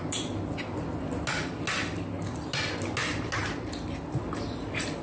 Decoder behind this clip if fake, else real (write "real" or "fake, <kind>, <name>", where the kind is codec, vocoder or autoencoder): real